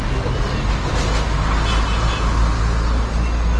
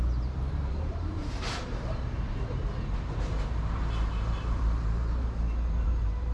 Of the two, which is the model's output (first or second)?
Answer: second